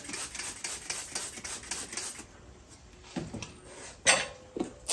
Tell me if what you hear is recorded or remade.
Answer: recorded